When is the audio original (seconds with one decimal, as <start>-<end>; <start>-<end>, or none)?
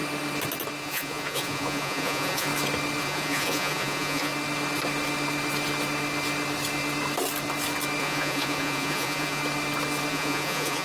0.0-0.8; 2.5-3.0; 4.3-8.0; 9.4-10.1